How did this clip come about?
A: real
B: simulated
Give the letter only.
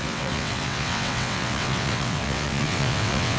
B